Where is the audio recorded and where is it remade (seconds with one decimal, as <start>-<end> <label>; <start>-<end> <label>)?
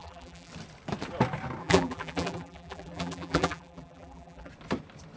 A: 0.0-0.5 remade; 0.5-1.6 recorded; 1.6-4.5 remade; 4.5-5.2 recorded